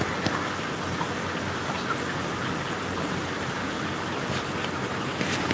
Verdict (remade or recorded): recorded